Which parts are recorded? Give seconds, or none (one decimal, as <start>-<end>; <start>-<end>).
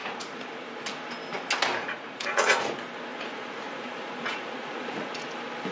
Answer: 0.5-1.8; 2.7-3.1; 5.1-5.7